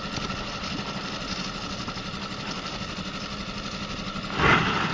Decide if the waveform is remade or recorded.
recorded